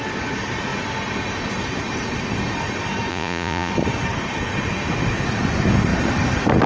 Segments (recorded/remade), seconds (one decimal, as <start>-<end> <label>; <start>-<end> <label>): 0.0-3.1 recorded; 3.1-3.7 remade; 3.7-6.7 recorded